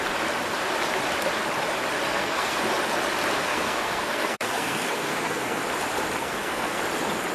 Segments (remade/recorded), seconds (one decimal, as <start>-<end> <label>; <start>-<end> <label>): 0.0-2.1 recorded; 2.1-2.6 remade; 2.6-3.4 recorded; 3.4-5.6 remade; 5.6-6.2 recorded; 6.2-6.8 remade; 6.8-7.3 recorded